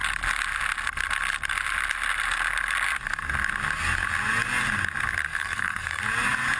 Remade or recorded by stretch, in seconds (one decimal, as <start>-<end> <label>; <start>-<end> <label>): 0.0-5.3 recorded; 5.3-6.0 remade; 6.0-6.6 recorded